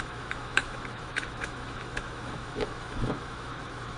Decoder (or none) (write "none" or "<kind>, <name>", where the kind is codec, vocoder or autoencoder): autoencoder, DAC-VAE